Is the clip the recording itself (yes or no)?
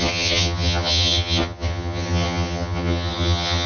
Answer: no